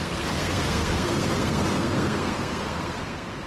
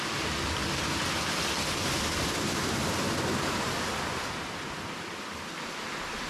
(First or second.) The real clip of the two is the second